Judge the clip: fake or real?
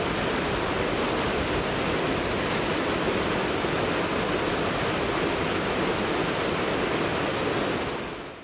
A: real